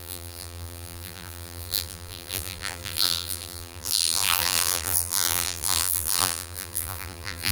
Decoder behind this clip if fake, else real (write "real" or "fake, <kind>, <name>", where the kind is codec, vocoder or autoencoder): fake, vocoder, BigVGAN v2